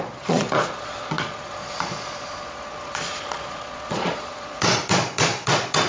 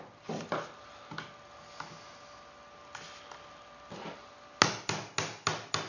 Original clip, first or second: second